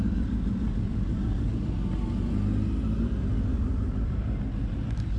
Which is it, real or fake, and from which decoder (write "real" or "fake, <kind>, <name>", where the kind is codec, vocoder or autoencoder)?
real